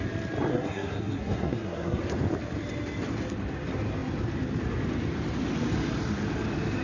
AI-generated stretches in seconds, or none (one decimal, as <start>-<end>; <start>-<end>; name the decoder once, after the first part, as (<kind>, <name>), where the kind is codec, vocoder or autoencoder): 0.5-2.0 (codec, SNAC)